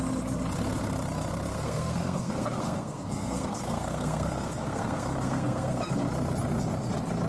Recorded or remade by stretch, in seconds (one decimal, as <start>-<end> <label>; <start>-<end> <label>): 0.0-1.5 recorded; 1.5-5.9 remade; 5.9-7.3 recorded